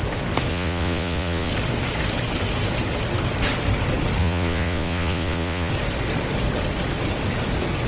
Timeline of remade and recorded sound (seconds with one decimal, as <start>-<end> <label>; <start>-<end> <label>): 0.0-0.5 recorded; 0.5-1.5 remade; 1.5-4.2 recorded; 4.2-5.7 remade; 5.7-7.9 recorded

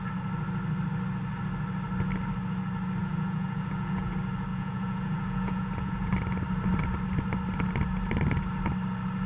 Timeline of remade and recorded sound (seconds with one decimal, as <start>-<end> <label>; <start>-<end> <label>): 0.0-3.0 recorded; 3.0-4.1 remade; 4.1-4.5 recorded; 4.5-6.1 remade; 6.1-9.3 recorded

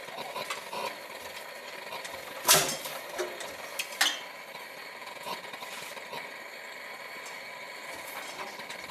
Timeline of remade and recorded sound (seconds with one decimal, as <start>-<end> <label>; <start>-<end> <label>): 0.0-5.0 recorded; 5.0-5.5 remade; 5.5-8.9 recorded

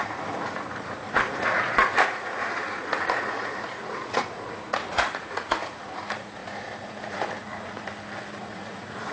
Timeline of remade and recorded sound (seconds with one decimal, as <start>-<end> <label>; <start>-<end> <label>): 0.0-7.9 remade; 7.9-8.4 recorded; 8.4-9.1 remade

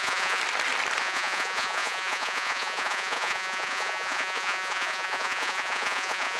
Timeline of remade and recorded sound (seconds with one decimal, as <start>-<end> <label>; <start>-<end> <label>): 0.0-0.4 remade; 0.4-1.0 recorded; 1.0-6.4 remade